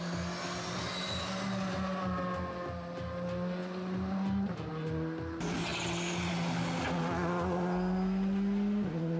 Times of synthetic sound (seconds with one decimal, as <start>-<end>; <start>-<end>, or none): none